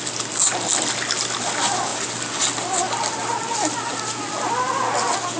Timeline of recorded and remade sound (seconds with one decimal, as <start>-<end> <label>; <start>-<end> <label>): 0.0-5.4 recorded